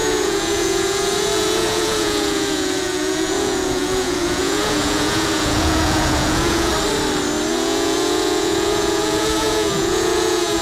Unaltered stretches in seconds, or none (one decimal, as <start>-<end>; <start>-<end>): 6.7-7.5